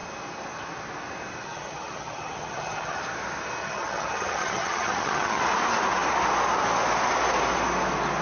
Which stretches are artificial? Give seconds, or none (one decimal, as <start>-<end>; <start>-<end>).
1.4-3.0; 3.6-5.4